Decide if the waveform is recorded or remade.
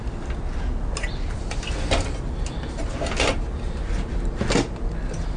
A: recorded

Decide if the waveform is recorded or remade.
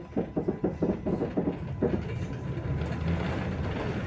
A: recorded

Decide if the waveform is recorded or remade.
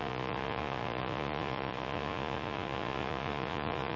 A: remade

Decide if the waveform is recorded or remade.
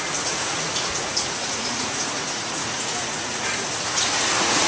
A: remade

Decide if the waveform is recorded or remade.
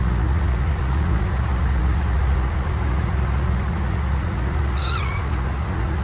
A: remade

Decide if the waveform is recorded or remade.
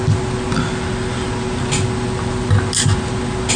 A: recorded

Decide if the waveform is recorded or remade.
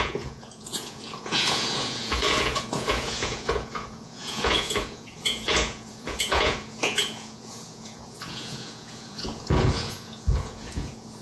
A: remade